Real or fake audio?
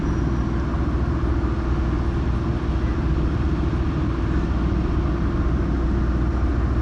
real